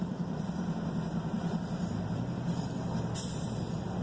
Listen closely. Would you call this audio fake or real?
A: fake